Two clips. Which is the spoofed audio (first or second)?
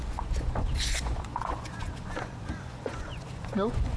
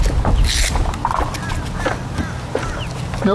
first